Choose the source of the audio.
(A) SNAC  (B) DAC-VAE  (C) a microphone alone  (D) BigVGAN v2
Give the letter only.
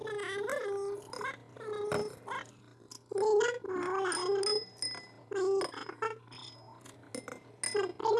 C